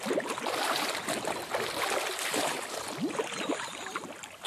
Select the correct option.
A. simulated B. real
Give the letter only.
B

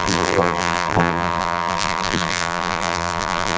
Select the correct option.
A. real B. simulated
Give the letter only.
B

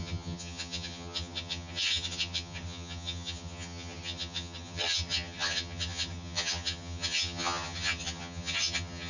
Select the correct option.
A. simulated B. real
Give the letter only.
A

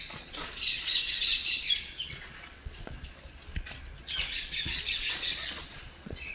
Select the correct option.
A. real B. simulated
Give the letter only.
B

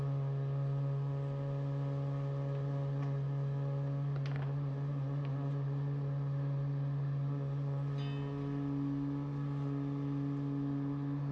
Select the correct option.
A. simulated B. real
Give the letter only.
B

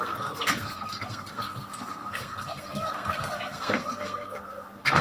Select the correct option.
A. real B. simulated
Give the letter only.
B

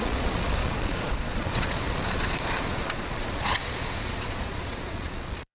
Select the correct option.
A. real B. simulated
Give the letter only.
B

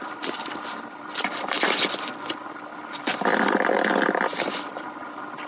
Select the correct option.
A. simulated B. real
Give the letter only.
A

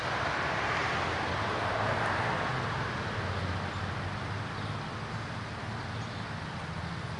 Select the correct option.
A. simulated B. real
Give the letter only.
B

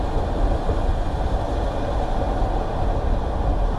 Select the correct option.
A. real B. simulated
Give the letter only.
A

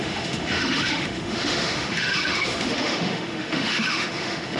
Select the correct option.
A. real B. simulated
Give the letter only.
B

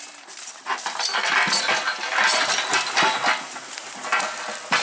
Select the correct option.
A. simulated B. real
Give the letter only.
A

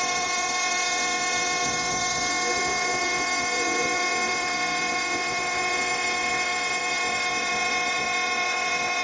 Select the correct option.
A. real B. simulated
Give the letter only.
B